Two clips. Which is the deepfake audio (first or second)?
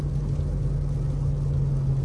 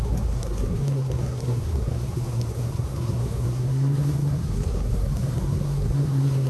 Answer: second